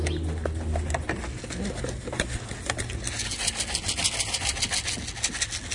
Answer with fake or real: real